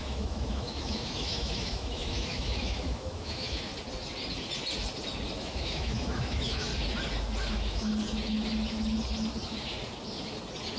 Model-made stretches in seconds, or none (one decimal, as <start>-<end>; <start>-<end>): 0.0-3.7; 5.4-6.7; 7.5-7.9